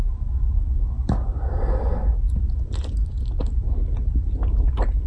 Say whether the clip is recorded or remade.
recorded